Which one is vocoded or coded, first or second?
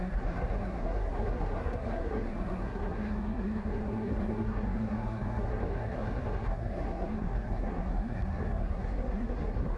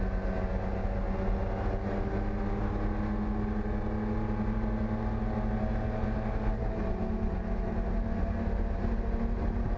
first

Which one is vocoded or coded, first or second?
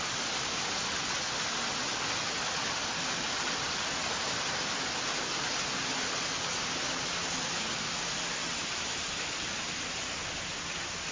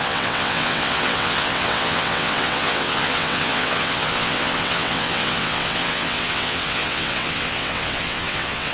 second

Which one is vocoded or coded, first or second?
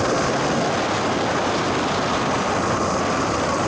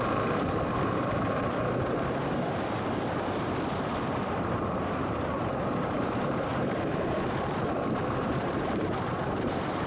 second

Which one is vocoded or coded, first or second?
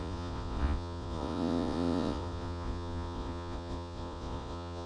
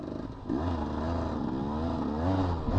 first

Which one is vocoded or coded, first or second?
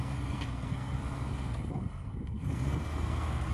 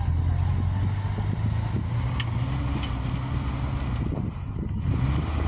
first